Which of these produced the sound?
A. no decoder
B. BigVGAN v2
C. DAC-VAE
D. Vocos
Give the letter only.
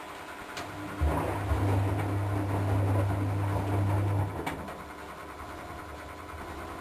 A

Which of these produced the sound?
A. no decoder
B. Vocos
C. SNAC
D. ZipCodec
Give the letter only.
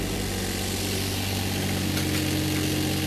A